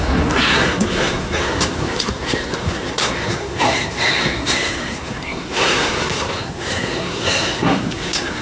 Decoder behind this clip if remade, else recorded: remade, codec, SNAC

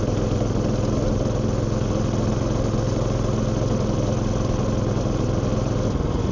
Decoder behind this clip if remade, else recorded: recorded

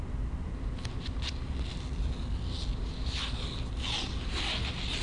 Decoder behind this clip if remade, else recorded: recorded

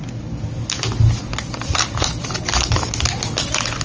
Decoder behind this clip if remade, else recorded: recorded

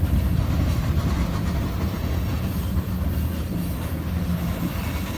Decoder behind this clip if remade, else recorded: recorded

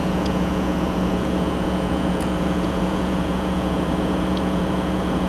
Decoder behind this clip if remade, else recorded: remade, vocoder, Vocos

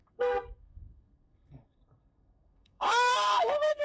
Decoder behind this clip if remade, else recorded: remade, codec, SNAC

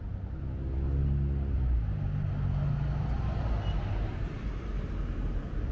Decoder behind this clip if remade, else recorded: recorded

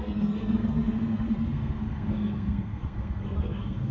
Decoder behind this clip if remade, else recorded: remade, codec, SNAC